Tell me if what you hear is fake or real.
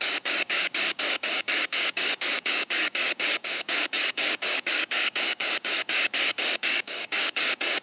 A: fake